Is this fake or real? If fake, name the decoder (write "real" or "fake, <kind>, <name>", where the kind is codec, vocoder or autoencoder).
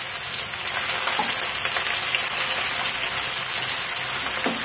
real